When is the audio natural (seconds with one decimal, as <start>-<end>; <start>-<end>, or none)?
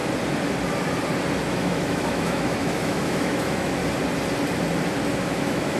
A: 0.0-1.5; 3.8-5.2